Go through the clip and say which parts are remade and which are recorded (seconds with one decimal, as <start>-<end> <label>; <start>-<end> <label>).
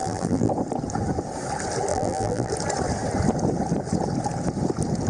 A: 0.0-0.5 remade; 0.5-1.9 recorded; 1.9-2.5 remade; 2.5-5.1 recorded